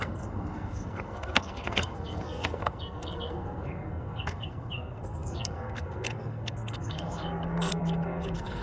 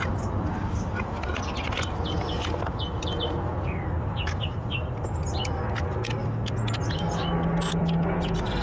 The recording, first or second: second